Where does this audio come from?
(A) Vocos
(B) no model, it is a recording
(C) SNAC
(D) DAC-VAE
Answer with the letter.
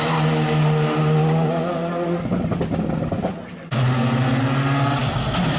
B